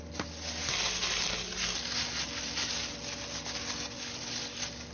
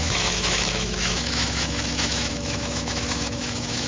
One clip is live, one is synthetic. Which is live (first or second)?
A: first